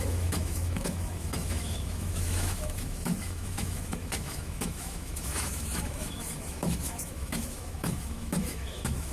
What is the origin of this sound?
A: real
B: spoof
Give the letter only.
B